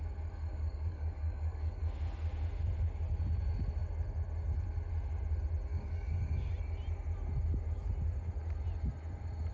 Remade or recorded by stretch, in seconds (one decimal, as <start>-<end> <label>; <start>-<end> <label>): 0.0-0.5 recorded; 0.5-1.8 remade; 1.8-5.7 recorded; 5.7-6.5 remade; 6.5-9.5 recorded